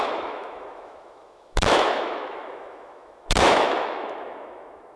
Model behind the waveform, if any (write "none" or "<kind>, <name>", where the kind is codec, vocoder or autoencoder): autoencoder, DAC-VAE